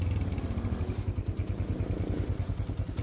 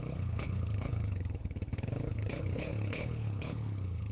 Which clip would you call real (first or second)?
first